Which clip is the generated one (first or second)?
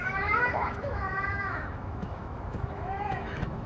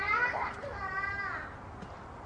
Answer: first